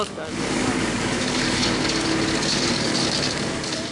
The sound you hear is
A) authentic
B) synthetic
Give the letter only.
B